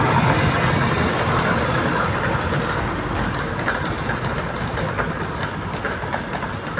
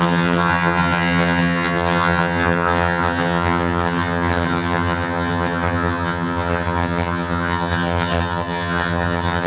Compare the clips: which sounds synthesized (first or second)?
second